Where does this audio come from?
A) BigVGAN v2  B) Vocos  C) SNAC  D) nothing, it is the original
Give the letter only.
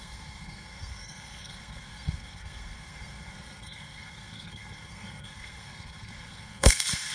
C